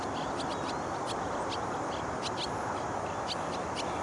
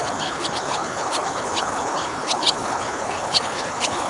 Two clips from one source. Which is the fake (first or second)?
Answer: second